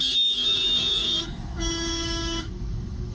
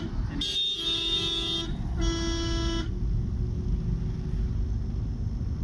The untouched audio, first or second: second